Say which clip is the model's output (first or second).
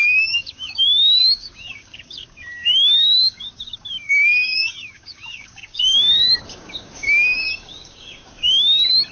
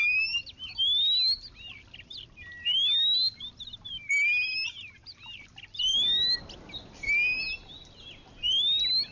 first